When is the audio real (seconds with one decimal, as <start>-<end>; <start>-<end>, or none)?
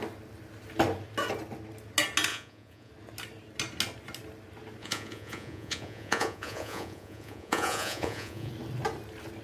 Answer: 0.0-2.3; 2.9-4.8; 8.5-9.4